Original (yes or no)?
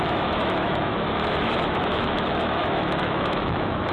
no